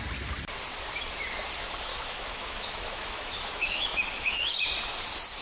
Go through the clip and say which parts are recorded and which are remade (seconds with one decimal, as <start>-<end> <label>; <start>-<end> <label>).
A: 0.0-1.9 recorded; 1.9-4.6 remade; 4.6-5.4 recorded